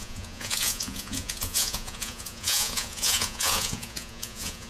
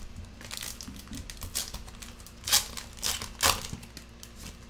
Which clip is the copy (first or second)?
first